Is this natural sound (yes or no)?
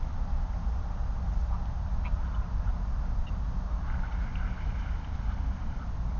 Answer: yes